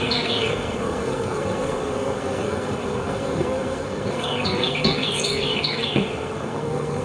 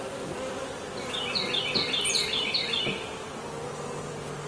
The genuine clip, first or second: second